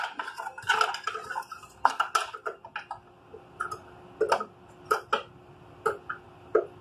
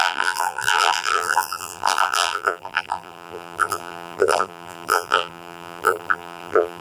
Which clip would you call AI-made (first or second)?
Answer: second